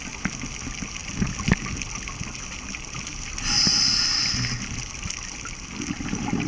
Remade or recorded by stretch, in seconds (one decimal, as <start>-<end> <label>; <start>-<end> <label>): 0.0-6.5 recorded